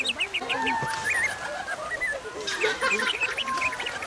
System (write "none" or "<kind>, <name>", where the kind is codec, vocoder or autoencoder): none